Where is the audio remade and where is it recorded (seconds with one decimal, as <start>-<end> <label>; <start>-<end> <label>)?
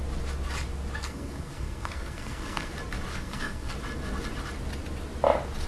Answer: 0.0-1.0 recorded; 1.0-2.7 remade; 2.7-3.1 recorded; 3.1-3.7 remade; 3.7-5.7 recorded